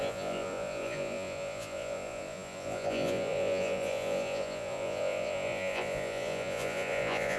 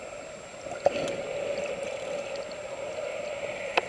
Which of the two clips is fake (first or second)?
first